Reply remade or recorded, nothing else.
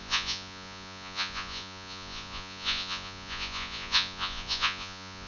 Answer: remade